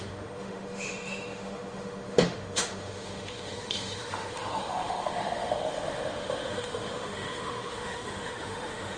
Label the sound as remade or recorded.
remade